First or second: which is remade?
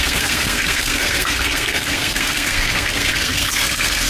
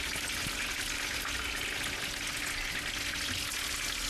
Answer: first